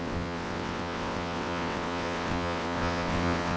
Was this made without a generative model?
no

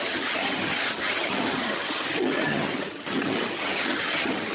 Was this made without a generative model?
no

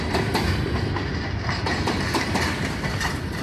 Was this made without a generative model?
yes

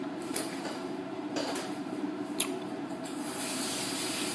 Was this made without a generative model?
no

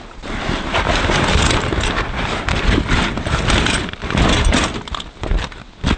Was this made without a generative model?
yes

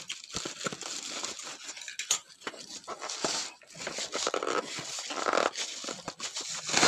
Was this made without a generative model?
yes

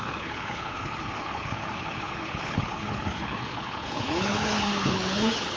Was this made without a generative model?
no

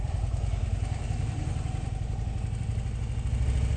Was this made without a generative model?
no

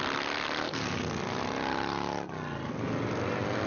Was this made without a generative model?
yes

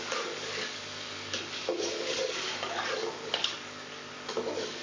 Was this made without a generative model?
no